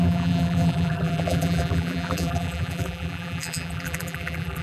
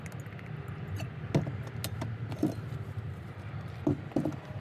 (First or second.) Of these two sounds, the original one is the second